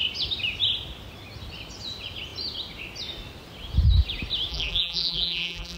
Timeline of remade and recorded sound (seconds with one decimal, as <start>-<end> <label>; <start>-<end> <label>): 0.0-4.5 recorded; 4.5-5.8 remade